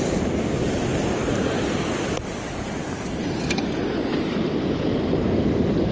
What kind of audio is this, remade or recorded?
recorded